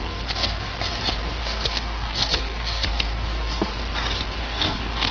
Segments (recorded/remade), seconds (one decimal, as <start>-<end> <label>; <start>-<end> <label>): 0.0-0.7 remade; 0.7-1.4 recorded; 1.4-3.7 remade; 3.7-4.4 recorded; 4.4-5.1 remade